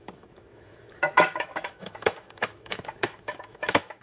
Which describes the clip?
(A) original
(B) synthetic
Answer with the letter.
B